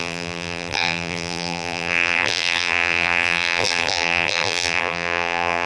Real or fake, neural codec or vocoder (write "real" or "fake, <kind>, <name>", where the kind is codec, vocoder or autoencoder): fake, vocoder, BigVGAN v2